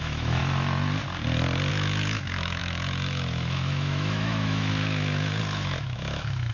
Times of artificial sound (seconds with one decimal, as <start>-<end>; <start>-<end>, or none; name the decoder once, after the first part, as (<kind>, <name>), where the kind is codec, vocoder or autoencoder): 0.0-0.4 (autoencoder, DAC-VAE); 1.7-6.5